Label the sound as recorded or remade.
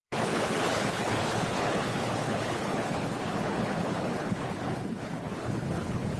remade